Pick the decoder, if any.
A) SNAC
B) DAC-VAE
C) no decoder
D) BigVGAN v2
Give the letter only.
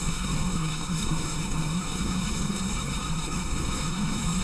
A